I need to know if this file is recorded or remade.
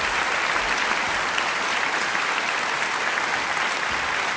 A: recorded